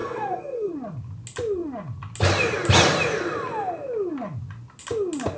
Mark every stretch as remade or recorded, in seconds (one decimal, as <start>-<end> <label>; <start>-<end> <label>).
0.0-0.7 remade; 0.7-5.4 recorded